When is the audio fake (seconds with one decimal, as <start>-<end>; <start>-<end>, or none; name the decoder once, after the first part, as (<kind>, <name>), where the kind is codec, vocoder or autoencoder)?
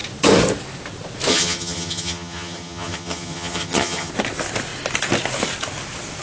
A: 1.3-4.1 (vocoder, HiFi-GAN)